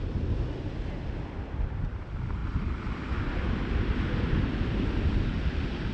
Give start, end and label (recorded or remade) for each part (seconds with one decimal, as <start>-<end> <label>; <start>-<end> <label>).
0.0-5.9 recorded